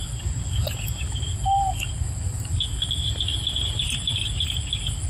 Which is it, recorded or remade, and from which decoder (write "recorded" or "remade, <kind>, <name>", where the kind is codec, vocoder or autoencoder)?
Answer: recorded